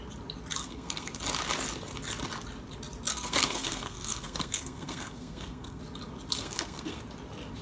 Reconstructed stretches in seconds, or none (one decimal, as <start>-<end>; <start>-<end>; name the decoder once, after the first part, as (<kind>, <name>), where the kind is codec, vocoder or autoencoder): 0.6-1.2 (codec, SNAC); 3.1-5.8; 6.4-7.0